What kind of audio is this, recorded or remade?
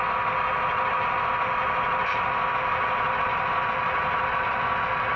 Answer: recorded